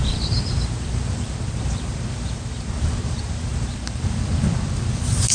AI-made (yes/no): yes